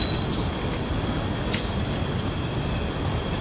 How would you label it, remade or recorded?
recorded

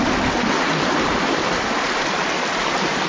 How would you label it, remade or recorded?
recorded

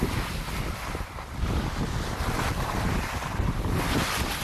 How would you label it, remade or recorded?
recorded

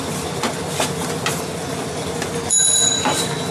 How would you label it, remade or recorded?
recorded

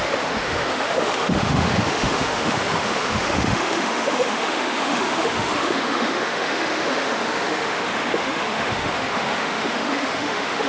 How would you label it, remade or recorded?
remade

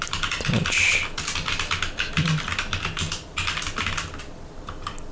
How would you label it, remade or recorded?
recorded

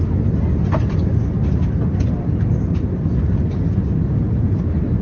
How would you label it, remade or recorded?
recorded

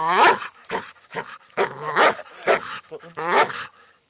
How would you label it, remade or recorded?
remade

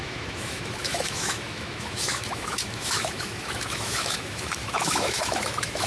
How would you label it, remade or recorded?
remade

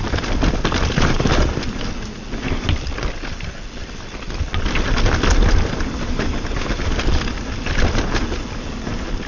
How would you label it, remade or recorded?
recorded